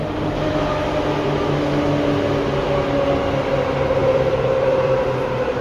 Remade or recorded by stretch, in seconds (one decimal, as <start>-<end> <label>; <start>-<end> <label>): 0.0-4.0 recorded; 4.0-5.0 remade; 5.0-5.6 recorded